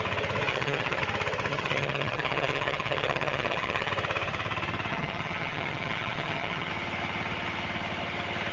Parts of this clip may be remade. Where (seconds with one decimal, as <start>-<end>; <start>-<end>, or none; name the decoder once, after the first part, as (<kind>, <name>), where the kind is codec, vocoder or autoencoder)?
0.5-1.0 (vocoder, HiFi-GAN); 1.5-3.9; 4.9-6.7